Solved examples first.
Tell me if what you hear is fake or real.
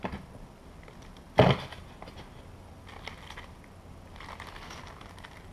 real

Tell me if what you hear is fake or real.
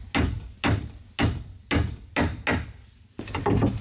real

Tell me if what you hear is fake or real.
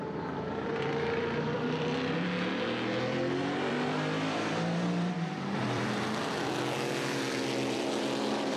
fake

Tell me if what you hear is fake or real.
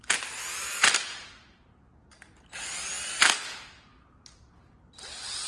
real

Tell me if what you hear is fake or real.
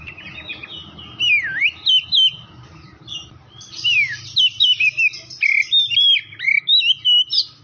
real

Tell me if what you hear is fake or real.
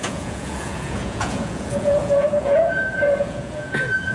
fake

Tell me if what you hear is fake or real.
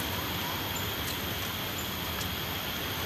fake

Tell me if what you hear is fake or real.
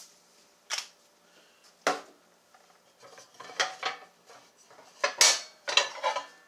real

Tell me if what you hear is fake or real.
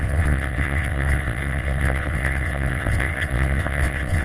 fake